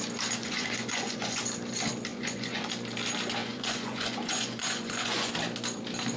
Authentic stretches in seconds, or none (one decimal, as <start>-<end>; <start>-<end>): 0.0-0.4; 1.4-2.1; 2.7-3.4; 5.3-6.2